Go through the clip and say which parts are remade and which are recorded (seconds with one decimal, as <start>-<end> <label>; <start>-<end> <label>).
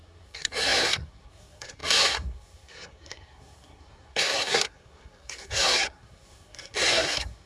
0.0-7.5 remade